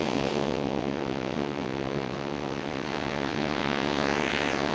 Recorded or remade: remade